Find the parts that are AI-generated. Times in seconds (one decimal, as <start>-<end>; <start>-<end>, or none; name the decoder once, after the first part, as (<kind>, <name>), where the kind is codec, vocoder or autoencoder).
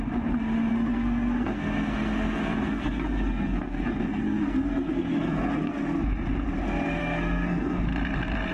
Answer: 0.7-5.8 (codec, SNAC); 7.0-7.8